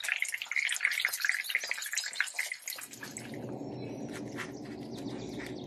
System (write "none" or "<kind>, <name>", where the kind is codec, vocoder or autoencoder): none